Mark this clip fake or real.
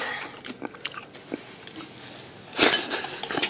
real